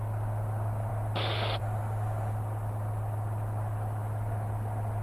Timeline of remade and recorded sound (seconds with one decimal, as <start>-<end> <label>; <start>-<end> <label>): 0.0-5.0 recorded